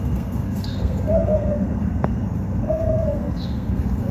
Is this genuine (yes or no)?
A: no